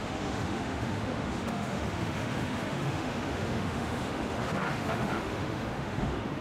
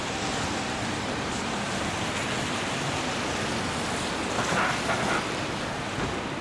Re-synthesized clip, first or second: first